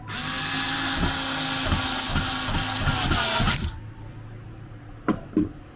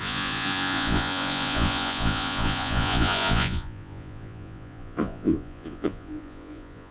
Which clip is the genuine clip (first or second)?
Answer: first